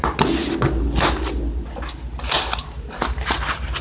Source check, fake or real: real